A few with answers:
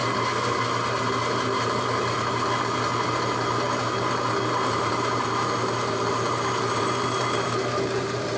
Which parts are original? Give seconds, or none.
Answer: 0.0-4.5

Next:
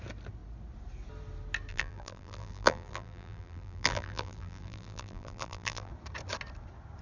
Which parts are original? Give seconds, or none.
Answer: 0.0-1.7; 5.9-7.0

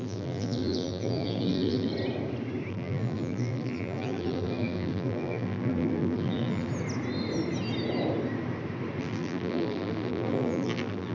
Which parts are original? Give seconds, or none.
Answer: 1.9-2.7; 6.7-9.0

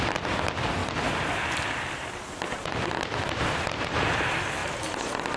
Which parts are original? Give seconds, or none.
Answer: 0.0-0.8; 4.0-4.6

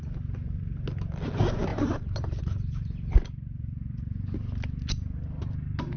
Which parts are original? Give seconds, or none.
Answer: 0.0-1.7; 2.4-6.0